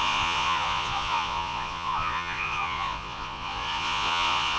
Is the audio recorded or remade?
remade